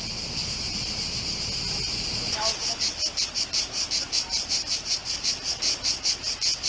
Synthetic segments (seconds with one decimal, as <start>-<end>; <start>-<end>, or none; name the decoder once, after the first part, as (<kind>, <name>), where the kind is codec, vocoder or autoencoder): none